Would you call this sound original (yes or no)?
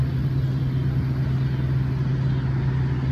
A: yes